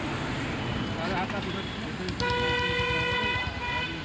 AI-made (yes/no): no